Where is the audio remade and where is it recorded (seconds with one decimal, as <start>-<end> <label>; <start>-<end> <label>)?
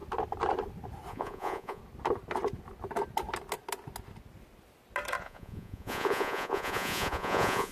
0.0-1.1 recorded; 1.1-1.8 remade; 1.8-5.2 recorded; 5.2-7.7 remade